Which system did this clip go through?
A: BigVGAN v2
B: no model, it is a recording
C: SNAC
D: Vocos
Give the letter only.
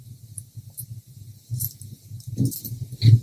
B